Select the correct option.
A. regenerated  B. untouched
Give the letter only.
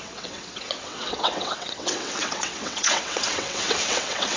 A